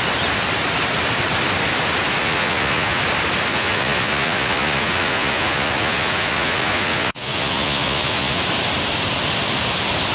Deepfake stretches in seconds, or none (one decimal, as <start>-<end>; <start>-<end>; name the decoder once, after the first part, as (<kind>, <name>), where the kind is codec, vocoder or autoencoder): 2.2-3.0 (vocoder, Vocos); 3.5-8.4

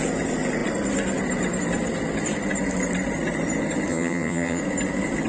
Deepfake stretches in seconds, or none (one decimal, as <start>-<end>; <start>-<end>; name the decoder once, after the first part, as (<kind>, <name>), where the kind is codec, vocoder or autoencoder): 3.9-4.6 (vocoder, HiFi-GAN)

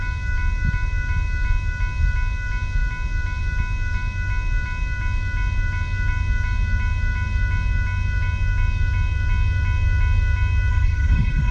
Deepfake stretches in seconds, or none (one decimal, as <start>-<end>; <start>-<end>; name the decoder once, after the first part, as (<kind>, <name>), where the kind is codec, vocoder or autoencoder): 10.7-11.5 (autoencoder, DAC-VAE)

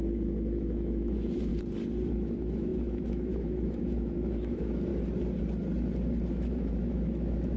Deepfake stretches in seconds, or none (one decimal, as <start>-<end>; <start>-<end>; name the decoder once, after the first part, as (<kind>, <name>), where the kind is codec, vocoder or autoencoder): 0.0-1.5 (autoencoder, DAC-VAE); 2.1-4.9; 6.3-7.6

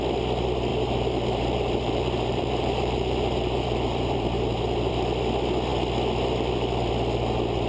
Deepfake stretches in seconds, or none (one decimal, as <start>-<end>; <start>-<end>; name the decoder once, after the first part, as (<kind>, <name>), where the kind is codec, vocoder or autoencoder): 0.7-4.9 (vocoder, BigVGAN v2)

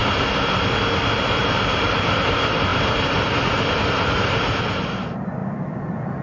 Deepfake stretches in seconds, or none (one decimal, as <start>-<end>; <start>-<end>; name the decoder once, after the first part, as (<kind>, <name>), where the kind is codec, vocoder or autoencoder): 1.4-5.4 (vocoder, BigVGAN v2)

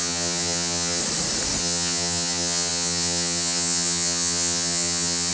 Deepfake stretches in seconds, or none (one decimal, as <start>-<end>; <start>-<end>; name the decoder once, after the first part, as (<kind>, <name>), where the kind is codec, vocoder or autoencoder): 0.0-1.0 (vocoder, HiFi-GAN); 1.6-5.3